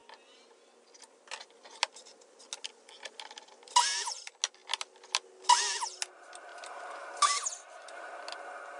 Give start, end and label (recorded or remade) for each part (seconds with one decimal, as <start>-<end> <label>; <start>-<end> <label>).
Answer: 0.0-8.8 recorded